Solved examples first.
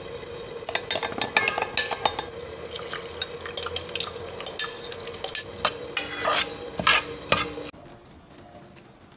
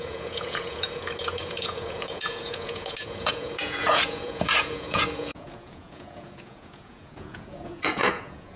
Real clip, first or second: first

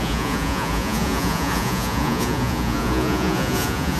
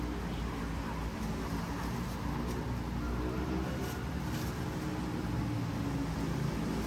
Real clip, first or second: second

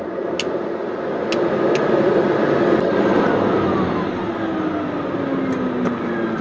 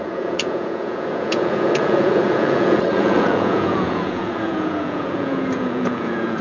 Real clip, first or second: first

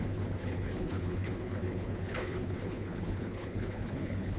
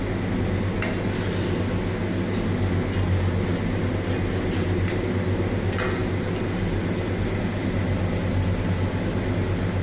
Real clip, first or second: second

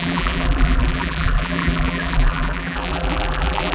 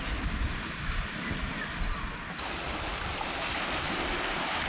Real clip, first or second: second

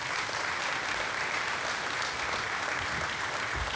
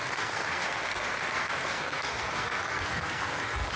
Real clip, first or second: first